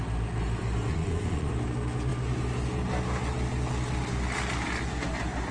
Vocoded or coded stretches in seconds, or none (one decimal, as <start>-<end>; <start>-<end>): 0.9-1.5